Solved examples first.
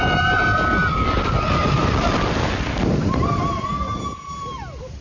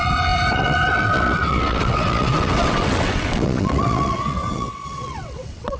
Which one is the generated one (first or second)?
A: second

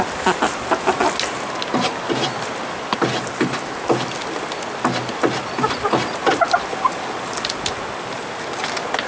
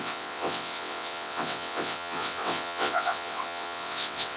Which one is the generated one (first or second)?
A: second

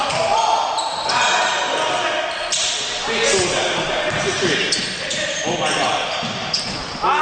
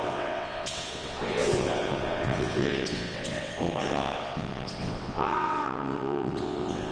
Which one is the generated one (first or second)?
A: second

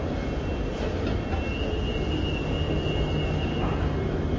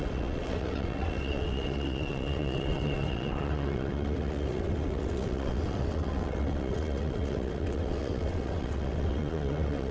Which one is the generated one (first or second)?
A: second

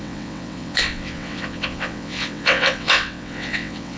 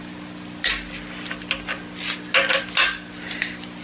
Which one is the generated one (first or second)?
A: first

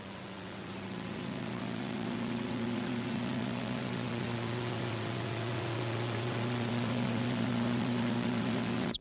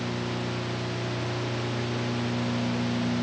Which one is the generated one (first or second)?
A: first